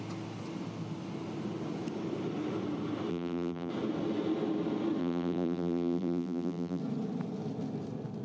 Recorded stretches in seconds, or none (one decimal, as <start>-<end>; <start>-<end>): 0.0-3.1; 3.7-5.0; 6.8-8.2